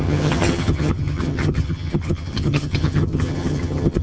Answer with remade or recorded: remade